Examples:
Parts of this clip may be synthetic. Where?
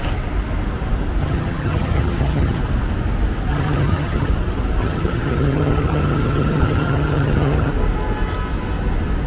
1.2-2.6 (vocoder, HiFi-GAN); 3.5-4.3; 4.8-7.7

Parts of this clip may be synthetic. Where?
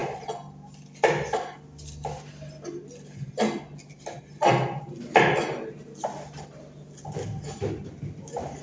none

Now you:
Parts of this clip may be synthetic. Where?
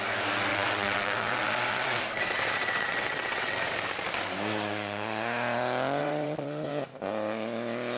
0.5-2.0 (vocoder, WaveNeXt); 2.6-3.6; 6.0-6.7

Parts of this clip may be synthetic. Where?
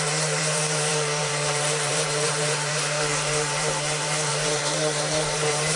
0.0-5.8 (vocoder, BigVGAN v2)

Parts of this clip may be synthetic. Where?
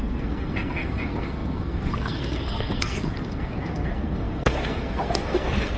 0.0-5.8 (codec, SNAC)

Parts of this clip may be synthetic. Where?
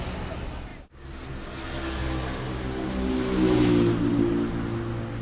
none